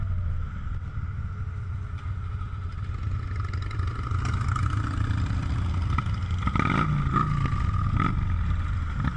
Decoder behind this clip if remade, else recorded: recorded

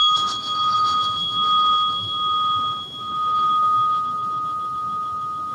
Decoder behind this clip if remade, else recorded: remade, autoencoder, DAC-VAE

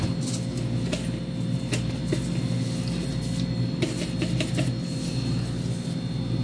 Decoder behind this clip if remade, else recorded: recorded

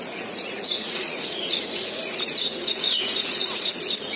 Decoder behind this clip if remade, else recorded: remade, vocoder, Vocos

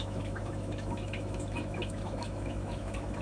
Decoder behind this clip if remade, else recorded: remade, autoencoder, DAC-VAE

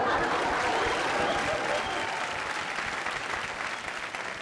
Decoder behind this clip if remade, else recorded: recorded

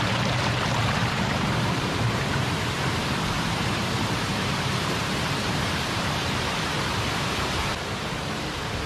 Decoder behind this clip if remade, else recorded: remade, vocoder, BigVGAN v2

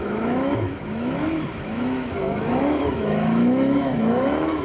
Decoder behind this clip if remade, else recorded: remade, autoencoder, DAC-VAE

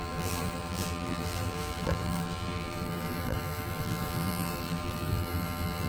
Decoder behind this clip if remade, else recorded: remade, vocoder, BigVGAN v2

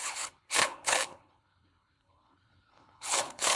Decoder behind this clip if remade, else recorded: remade, codec, HILCodec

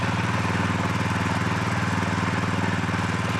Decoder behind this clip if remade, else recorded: recorded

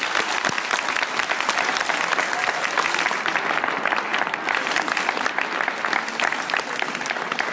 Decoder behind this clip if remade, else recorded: recorded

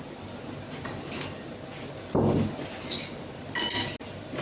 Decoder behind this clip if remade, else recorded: recorded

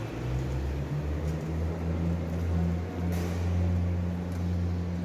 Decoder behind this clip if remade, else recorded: recorded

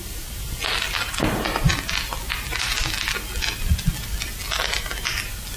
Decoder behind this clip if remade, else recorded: recorded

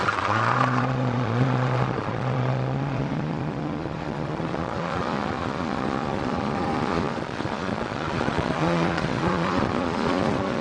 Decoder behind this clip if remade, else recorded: remade, vocoder, Vocos